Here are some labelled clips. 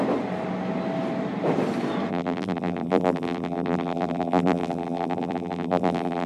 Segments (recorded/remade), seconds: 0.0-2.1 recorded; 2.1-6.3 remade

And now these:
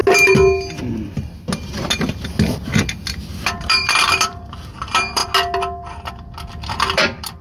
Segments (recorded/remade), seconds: 0.0-3.6 recorded; 3.6-5.2 remade; 5.2-6.1 recorded; 6.1-7.4 remade

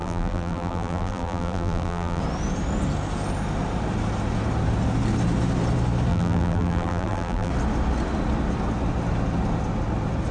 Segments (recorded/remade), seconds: 0.0-2.2 remade; 2.2-6.1 recorded; 6.1-7.5 remade; 7.5-10.3 recorded

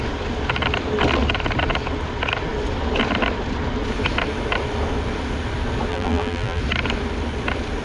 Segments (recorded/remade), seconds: 0.0-5.9 recorded; 5.9-6.6 remade; 6.6-7.8 recorded

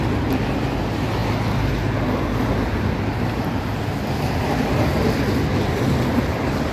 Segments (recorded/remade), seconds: 0.0-6.7 recorded

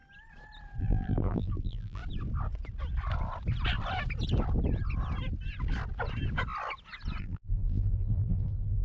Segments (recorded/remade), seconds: 0.0-0.8 recorded; 0.8-2.0 remade; 2.0-7.2 recorded; 7.2-8.8 remade

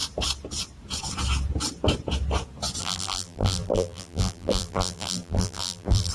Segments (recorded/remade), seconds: 0.0-2.8 recorded; 2.8-6.1 remade

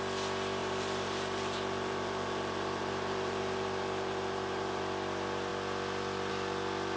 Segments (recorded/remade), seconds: 0.0-0.6 recorded; 0.6-4.8 remade; 4.8-7.0 recorded